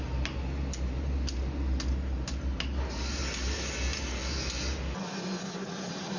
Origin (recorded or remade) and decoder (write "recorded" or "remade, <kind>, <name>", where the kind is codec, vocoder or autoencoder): recorded